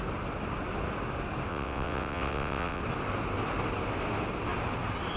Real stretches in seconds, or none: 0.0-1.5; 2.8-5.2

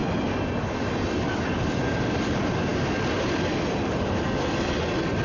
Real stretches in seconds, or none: 0.0-5.2

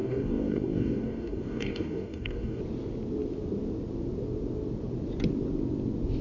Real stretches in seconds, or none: 2.6-6.2

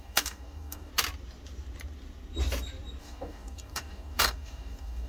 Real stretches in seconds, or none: 0.9-3.0

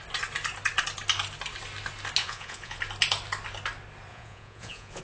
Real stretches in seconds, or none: 0.0-2.2; 2.8-4.1

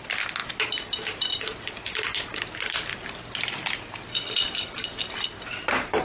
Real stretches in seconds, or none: 0.0-6.0

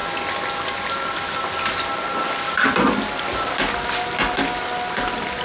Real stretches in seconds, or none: 0.0-5.4